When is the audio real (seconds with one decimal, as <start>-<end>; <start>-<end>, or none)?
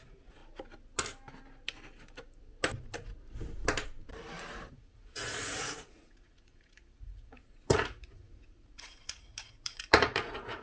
0.4-4.7